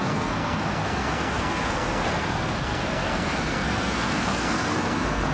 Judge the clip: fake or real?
fake